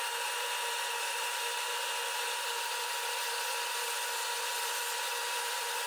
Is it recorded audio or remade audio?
remade